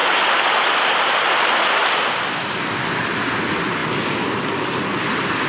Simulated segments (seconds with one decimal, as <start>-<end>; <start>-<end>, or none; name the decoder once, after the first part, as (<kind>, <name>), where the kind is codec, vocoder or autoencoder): 0.0-3.3 (vocoder, BigVGAN v2); 3.8-4.8